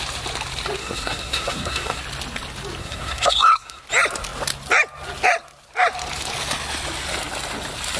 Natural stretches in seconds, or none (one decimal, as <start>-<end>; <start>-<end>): 0.0-0.8; 2.0-2.8; 3.8-8.0